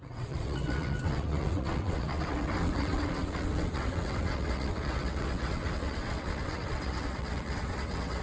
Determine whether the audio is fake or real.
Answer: fake